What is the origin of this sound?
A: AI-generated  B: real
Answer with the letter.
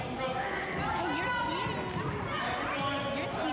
B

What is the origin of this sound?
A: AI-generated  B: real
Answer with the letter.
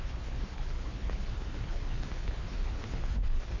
A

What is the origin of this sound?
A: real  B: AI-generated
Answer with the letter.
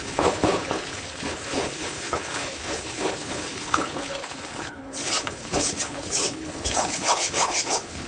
B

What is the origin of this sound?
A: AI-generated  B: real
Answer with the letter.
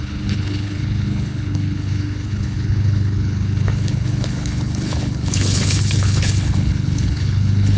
A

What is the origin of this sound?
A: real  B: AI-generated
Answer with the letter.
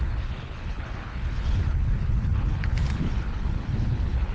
B